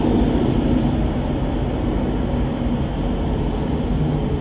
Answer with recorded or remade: recorded